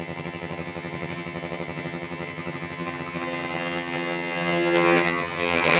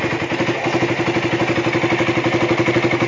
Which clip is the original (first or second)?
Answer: second